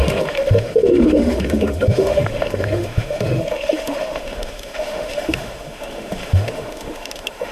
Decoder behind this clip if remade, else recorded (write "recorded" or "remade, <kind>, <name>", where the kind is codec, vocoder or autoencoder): remade, autoencoder, DAC-VAE